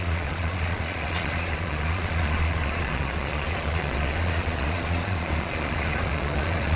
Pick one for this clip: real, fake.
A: fake